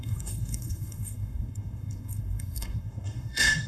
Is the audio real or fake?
fake